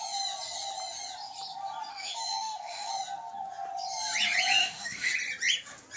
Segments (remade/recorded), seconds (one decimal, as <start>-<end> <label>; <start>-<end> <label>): 0.0-1.9 recorded; 1.9-2.9 remade; 2.9-4.6 recorded; 4.6-5.1 remade; 5.1-6.0 recorded